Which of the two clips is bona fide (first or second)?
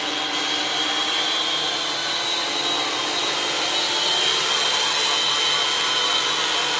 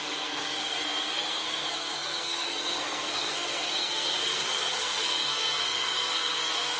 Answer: first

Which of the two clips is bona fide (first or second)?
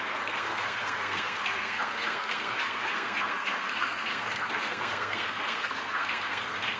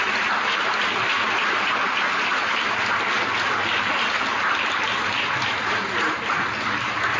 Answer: second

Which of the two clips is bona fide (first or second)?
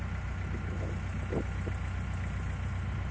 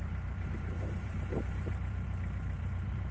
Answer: first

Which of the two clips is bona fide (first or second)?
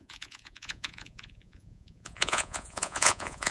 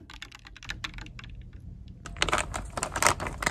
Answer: second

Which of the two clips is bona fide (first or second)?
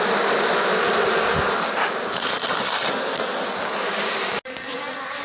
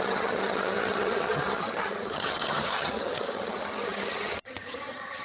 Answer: first